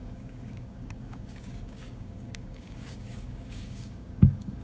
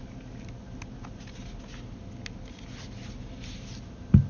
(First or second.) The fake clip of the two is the first